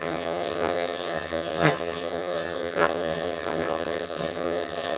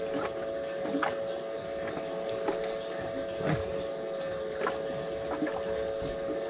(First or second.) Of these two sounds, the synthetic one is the first